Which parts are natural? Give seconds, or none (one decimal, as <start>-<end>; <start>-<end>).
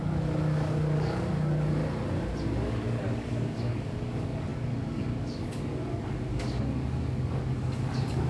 1.8-2.4